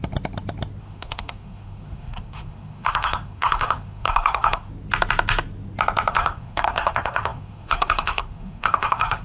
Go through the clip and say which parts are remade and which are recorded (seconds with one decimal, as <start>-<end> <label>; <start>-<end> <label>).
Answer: 0.0-0.8 recorded; 0.8-4.7 remade; 4.7-6.1 recorded; 6.1-9.2 remade